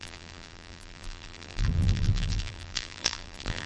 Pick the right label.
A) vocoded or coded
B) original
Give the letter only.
A